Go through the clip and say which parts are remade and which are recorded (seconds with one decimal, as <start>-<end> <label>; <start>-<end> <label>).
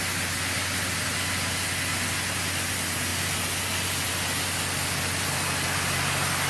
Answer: 0.0-6.5 recorded